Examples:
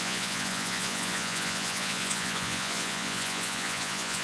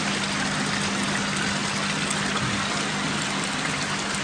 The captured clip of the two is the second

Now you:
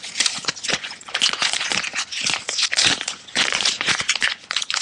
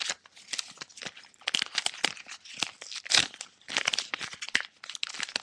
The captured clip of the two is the second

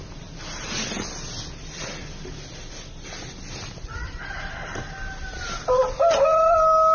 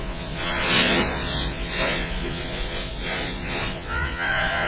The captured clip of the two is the first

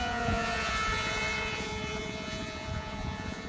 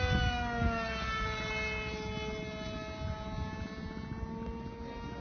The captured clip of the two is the second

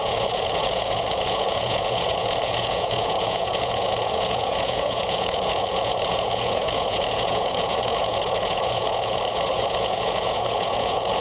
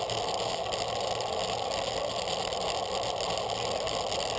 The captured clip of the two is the second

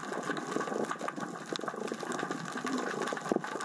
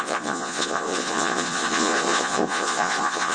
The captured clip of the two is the first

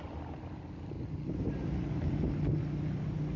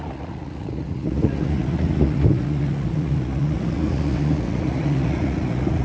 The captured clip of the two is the first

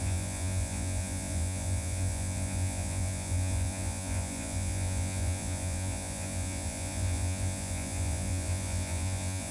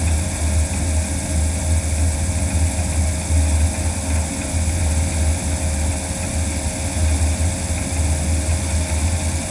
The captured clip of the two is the second